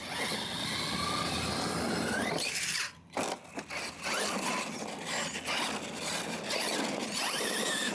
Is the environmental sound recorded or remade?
recorded